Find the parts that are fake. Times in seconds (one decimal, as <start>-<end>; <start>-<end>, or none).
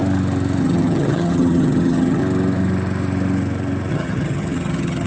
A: 0.6-2.2; 3.9-5.1